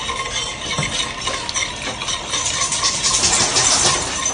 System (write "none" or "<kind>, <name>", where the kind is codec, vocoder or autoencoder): none